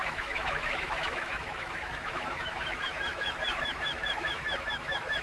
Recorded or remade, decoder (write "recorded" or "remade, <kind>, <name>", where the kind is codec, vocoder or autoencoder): remade, autoencoder, DAC-VAE